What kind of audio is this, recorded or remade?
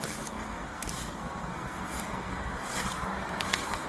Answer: remade